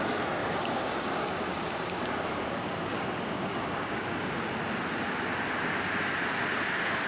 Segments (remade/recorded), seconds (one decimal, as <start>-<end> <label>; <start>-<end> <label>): 0.0-0.4 recorded; 0.4-4.3 remade; 4.3-7.1 recorded